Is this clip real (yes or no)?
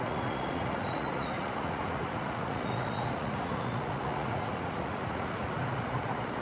no